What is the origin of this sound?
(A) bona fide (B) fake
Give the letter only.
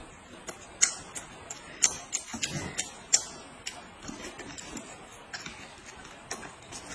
A